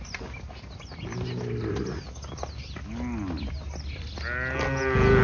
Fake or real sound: real